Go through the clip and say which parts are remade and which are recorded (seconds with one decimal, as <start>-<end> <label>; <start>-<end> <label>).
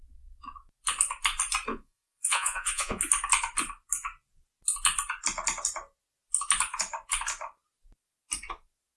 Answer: 0.0-1.7 recorded; 1.7-3.0 remade; 3.0-9.0 recorded